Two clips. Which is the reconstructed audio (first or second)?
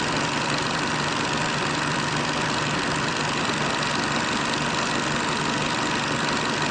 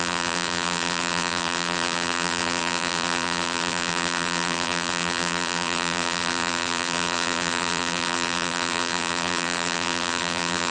second